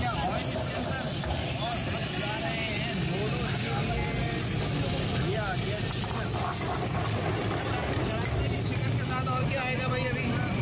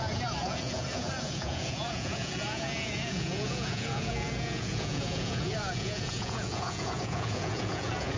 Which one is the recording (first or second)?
first